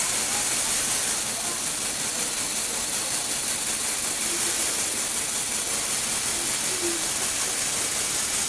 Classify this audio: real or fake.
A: real